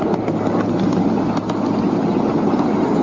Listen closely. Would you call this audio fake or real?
real